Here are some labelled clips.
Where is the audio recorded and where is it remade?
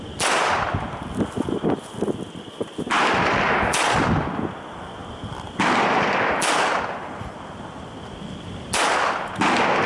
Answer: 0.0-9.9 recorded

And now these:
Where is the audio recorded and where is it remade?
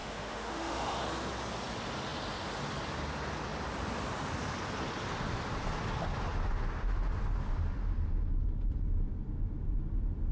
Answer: 0.0-1.0 remade; 1.0-10.3 recorded